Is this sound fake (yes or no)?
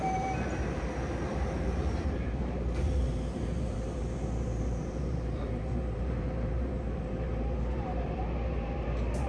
yes